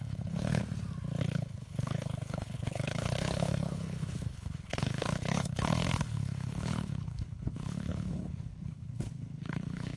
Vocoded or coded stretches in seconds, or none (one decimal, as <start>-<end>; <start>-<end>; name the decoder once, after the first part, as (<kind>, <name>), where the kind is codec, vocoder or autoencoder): 0.0-0.6 (codec, HILCodec); 1.2-10.0